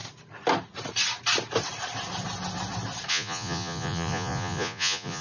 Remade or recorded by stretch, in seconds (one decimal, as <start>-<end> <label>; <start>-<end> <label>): 0.0-3.1 recorded; 3.1-5.2 remade